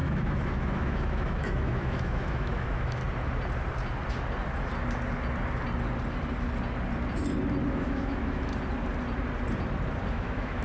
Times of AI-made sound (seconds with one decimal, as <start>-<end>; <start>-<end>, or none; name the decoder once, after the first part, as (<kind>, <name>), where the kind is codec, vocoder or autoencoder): 0.0-3.0 (autoencoder, DAC-VAE); 7.7-8.5; 10.1-10.6